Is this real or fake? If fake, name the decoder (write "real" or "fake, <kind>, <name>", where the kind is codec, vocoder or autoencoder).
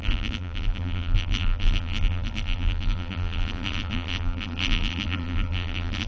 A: fake, vocoder, BigVGAN v2